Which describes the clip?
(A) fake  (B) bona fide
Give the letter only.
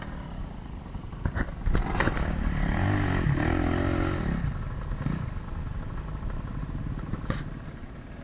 B